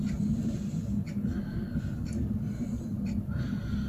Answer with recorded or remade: recorded